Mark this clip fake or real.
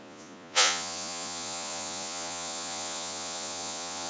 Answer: fake